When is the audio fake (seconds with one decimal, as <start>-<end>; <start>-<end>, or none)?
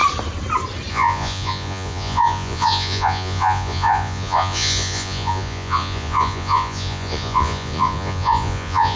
0.9-9.0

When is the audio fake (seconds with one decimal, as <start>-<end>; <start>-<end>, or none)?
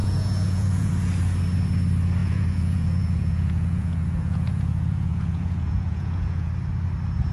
0.0-0.9; 2.2-6.5